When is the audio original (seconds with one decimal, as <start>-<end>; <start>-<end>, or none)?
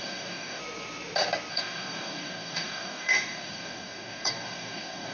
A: 0.6-1.5